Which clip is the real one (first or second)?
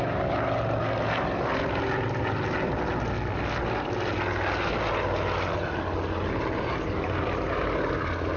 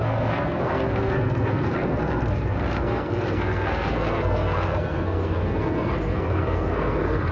first